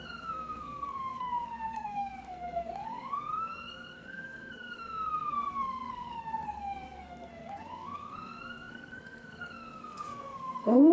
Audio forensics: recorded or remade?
remade